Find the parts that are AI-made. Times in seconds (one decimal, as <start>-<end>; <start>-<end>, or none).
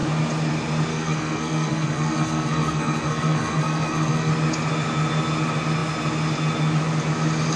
0.9-4.3